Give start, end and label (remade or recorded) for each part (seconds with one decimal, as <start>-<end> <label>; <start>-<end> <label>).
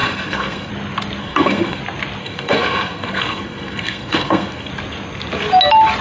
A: 0.0-0.7 remade; 0.7-1.2 recorded; 1.2-1.8 remade; 1.8-2.2 recorded; 2.2-4.7 remade; 4.7-6.0 recorded